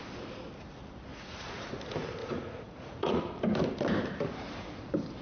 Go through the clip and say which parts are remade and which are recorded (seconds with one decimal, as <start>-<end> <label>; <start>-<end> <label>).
0.0-1.1 recorded; 1.1-1.7 remade; 1.7-2.2 recorded; 2.2-3.2 remade; 3.2-5.2 recorded